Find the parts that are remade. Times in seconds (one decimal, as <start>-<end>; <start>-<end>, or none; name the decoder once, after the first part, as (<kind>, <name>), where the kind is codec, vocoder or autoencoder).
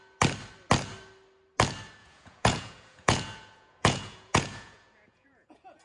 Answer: 2.0-5.8 (vocoder, Vocos)